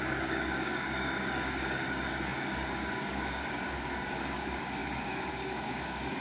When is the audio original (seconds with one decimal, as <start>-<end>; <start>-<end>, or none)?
none